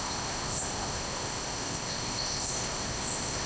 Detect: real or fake fake